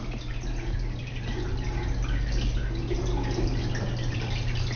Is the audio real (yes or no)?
yes